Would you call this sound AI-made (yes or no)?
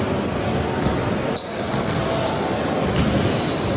no